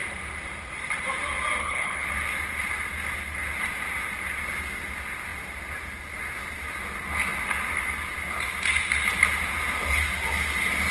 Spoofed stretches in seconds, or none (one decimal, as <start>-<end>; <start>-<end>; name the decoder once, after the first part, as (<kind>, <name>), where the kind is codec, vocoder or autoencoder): 1.6-2.1 (codec, HILCodec)